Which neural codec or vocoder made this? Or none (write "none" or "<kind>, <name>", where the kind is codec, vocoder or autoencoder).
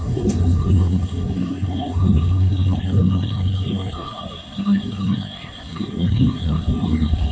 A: codec, SNAC